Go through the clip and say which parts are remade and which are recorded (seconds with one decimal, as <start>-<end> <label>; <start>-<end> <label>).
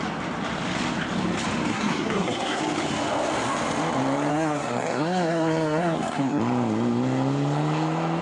0.0-1.7 recorded; 1.7-2.6 remade; 2.6-4.3 recorded; 4.3-6.4 remade; 6.4-8.2 recorded